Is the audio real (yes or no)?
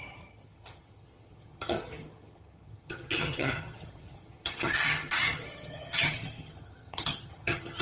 no